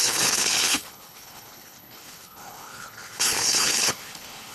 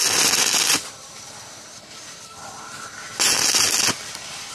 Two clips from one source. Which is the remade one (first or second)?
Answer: first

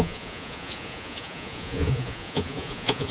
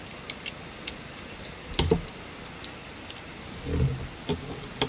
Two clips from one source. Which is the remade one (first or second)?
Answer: first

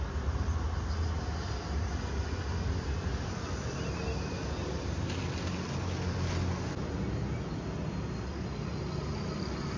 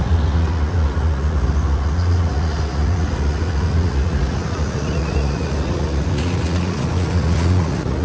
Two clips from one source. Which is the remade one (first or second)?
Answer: second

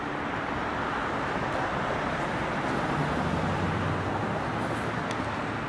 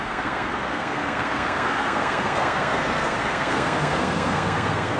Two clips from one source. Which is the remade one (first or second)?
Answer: second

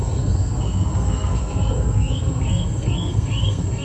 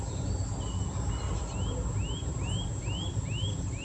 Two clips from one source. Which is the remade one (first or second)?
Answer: first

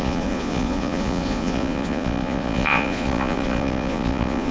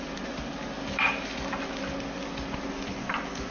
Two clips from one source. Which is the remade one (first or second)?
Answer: first